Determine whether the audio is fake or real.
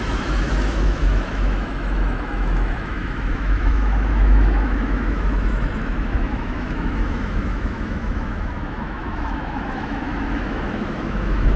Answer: fake